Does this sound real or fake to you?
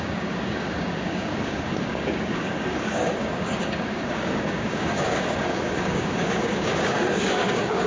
fake